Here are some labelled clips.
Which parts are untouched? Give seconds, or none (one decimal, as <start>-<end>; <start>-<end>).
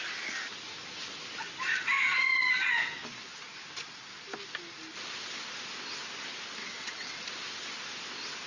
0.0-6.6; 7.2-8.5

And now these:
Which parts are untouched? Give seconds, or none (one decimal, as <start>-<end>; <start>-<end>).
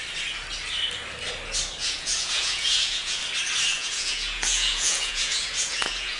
0.0-1.8; 3.2-3.7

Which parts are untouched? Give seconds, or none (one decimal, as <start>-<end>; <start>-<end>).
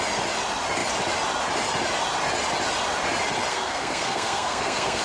0.0-3.5